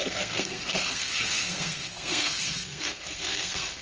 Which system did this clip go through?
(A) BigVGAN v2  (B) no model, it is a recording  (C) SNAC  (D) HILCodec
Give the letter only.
C